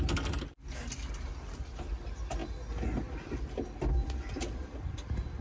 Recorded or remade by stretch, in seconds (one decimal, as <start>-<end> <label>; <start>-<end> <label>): 0.0-5.4 recorded